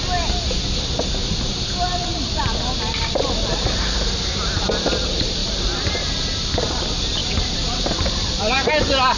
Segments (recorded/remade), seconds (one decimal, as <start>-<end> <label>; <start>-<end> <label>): 0.0-7.2 recorded; 7.2-8.7 remade; 8.7-9.2 recorded